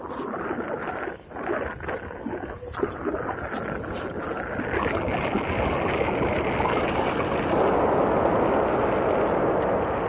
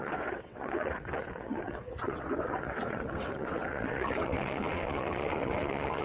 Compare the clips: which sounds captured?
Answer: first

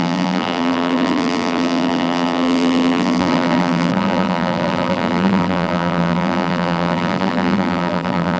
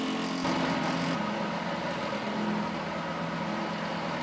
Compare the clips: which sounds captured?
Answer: second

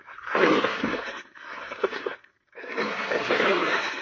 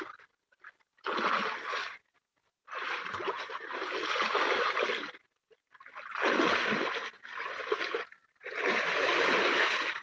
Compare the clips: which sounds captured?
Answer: second